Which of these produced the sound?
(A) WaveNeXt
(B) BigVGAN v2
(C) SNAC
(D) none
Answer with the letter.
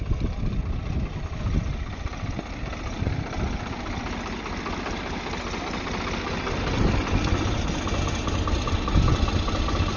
D